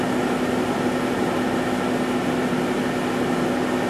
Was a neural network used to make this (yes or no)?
no